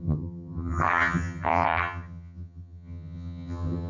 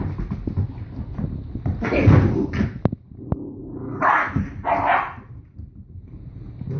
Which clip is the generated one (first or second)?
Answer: first